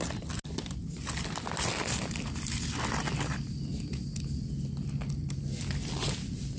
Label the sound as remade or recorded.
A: recorded